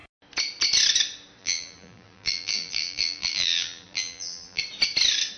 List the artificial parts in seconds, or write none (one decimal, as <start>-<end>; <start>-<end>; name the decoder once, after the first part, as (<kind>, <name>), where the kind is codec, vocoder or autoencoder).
1.4-4.6 (vocoder, BigVGAN v2)